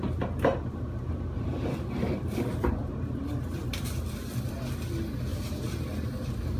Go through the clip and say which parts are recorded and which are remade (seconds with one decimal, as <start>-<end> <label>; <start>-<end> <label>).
0.0-0.5 recorded; 0.5-4.5 remade; 4.5-5.3 recorded; 5.3-6.6 remade